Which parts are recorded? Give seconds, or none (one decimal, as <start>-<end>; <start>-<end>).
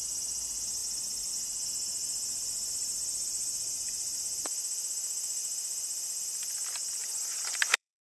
0.0-2.0; 4.2-7.0